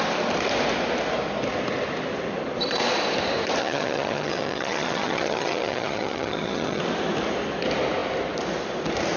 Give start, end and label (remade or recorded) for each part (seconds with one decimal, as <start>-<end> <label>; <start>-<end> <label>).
0.0-3.6 recorded; 3.6-6.8 remade; 6.8-9.2 recorded